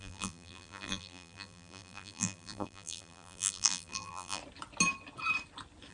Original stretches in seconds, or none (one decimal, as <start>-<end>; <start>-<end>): 4.4-5.9